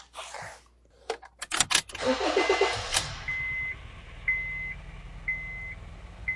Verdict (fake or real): real